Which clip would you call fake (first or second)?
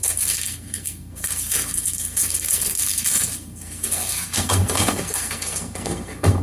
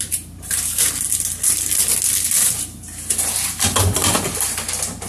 first